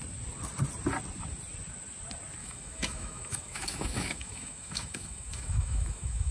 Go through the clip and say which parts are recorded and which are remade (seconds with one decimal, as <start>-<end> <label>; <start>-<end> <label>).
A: 0.0-2.4 recorded; 2.4-6.3 remade